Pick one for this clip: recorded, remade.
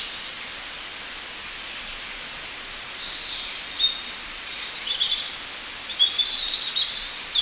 recorded